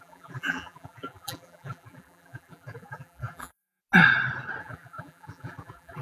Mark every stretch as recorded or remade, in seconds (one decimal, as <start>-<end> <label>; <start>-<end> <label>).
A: 0.0-3.8 remade; 3.8-4.6 recorded; 4.6-6.0 remade